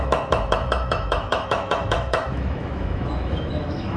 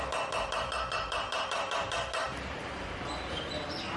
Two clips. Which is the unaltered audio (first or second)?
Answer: second